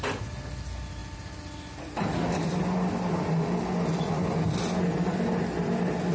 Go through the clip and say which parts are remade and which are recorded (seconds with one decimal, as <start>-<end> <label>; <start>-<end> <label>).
0.0-6.1 recorded